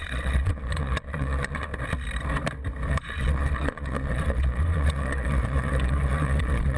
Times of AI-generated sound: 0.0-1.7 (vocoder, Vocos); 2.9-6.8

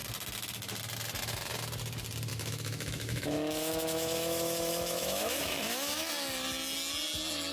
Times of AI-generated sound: 2.3-6.1 (autoencoder, DAC-VAE)

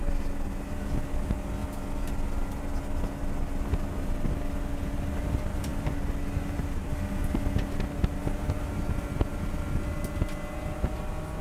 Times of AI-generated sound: none

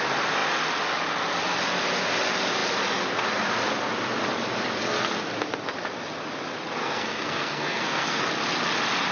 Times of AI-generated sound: 6.8-8.2 (codec, SNAC)

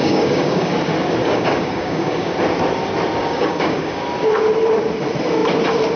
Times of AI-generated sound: 0.0-0.7 (codec, DAC); 1.2-2.3; 3.2-4.0

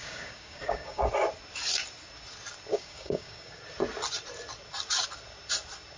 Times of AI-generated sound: 0.0-1.1 (codec, DAC); 2.7-3.6